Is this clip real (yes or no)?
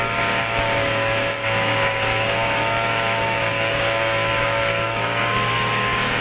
no